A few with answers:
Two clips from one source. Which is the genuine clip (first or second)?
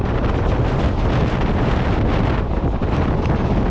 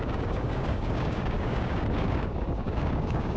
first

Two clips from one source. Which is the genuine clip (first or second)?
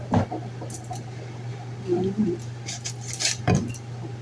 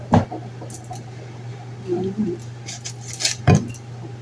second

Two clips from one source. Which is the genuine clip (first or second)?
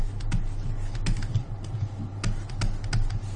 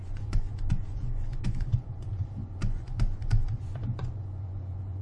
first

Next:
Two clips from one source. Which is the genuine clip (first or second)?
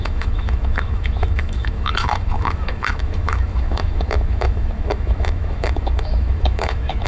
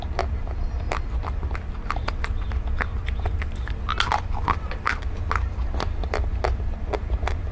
second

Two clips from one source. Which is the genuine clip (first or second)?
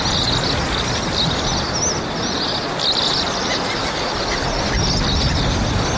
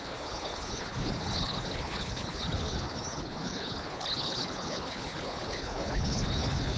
first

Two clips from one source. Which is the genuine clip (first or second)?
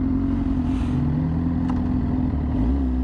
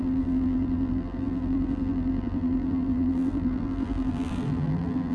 first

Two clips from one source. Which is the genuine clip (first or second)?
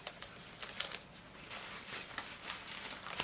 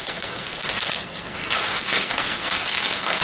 first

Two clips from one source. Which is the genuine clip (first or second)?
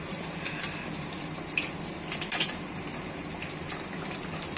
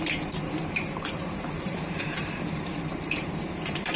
first